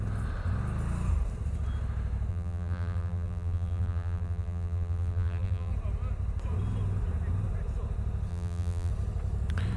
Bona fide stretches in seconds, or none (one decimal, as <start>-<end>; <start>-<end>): 0.0-2.3; 5.7-8.3; 8.9-9.8